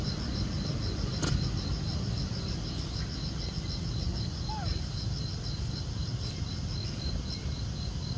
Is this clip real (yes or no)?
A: yes